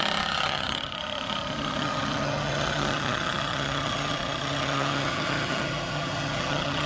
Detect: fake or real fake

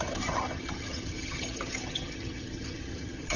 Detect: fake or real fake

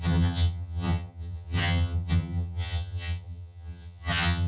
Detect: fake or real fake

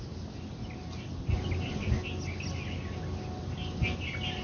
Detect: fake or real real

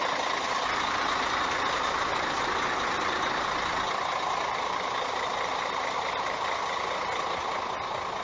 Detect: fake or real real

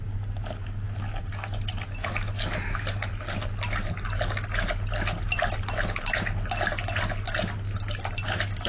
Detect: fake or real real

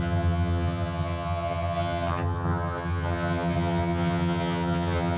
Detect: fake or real fake